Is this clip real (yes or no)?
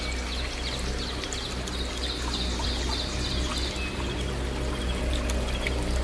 yes